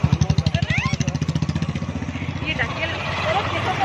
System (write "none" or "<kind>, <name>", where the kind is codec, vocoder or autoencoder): none